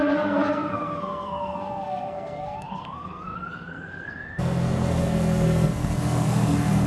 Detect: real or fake fake